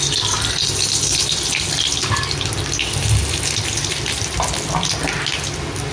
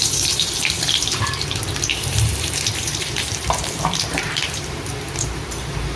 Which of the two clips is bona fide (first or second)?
first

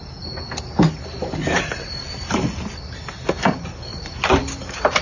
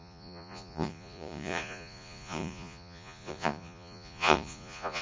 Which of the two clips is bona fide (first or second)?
first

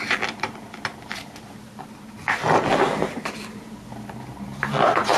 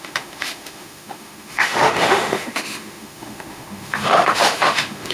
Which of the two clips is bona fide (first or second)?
first